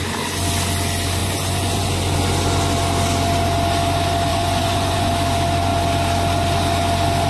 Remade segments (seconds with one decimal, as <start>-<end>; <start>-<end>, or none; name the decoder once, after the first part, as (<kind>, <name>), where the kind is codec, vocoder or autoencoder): 1.2-1.9 (vocoder, Vocos); 4.3-5.1